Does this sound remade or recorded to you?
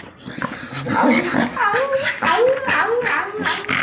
recorded